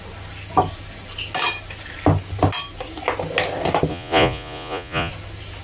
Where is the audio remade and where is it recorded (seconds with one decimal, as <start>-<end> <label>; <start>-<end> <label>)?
0.0-3.9 recorded; 3.9-5.1 remade; 5.1-5.6 recorded